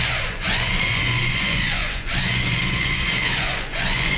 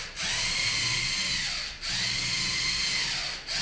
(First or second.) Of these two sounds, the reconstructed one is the first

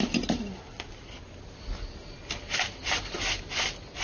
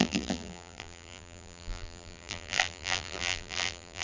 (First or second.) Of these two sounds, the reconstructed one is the second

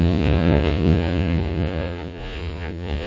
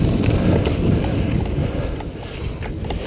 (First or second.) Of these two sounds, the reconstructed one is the first